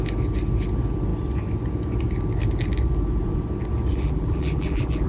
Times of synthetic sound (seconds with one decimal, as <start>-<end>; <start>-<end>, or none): 3.9-5.1